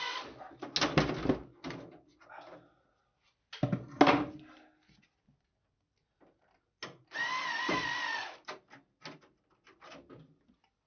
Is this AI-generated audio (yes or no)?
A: no